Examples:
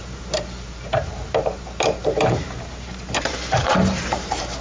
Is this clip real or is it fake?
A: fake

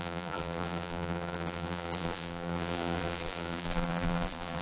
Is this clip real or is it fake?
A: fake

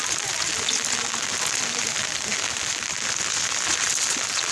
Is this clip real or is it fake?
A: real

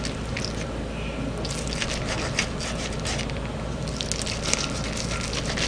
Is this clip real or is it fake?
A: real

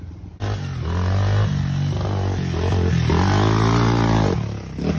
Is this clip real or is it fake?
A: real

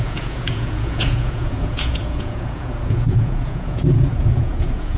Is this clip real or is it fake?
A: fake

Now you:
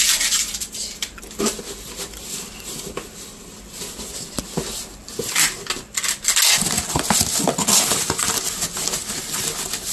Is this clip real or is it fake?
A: real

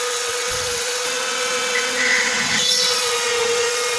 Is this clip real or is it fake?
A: fake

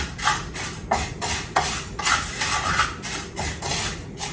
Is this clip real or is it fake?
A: real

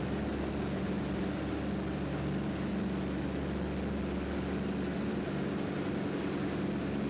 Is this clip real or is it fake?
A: real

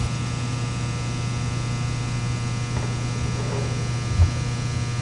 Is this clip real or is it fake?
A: real